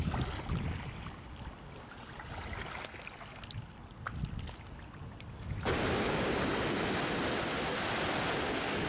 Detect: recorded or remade recorded